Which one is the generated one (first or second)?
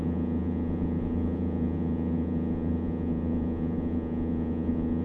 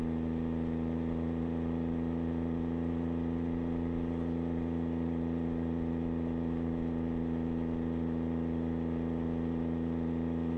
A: first